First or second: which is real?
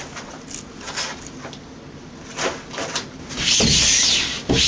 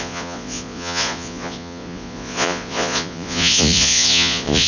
first